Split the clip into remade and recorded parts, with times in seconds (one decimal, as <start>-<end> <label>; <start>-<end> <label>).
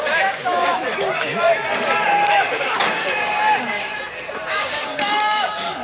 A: 0.0-1.5 remade; 1.5-2.3 recorded; 2.3-3.9 remade; 3.9-4.5 recorded; 4.5-5.8 remade